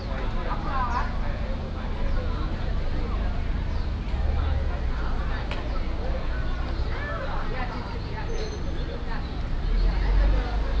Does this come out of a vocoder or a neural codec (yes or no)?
no